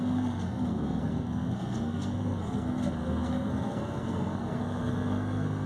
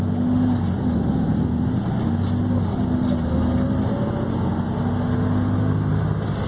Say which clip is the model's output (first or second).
first